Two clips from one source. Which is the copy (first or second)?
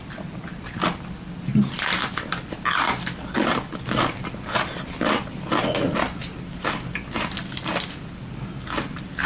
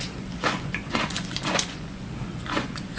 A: second